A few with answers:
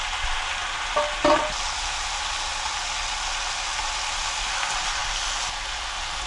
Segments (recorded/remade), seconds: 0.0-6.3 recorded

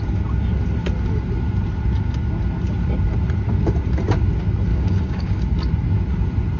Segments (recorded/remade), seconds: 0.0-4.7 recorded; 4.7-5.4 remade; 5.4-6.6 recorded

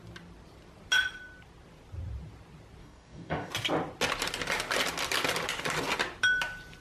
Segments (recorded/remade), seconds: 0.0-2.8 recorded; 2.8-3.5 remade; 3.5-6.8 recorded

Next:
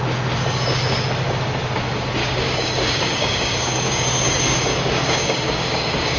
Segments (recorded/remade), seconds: 0.0-2.2 recorded; 2.2-6.2 remade

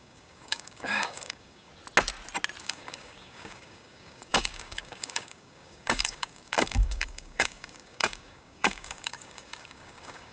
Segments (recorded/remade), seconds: 0.0-1.7 remade; 1.7-2.6 recorded; 2.6-10.3 remade

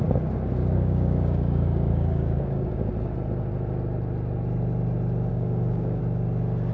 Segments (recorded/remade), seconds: 0.0-0.6 recorded; 0.6-2.9 remade; 2.9-5.3 recorded; 5.3-6.0 remade; 6.0-6.7 recorded

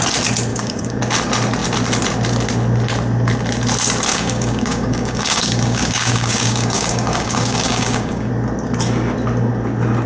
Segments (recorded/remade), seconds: 0.0-0.5 recorded; 0.5-1.0 remade; 1.0-4.1 recorded; 4.1-8.3 remade; 8.3-10.1 recorded

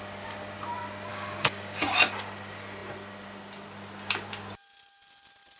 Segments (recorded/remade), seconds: 0.0-1.1 recorded; 1.1-2.0 remade; 2.0-5.6 recorded